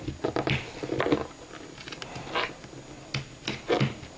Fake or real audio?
real